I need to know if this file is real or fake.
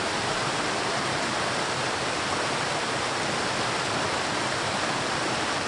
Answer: real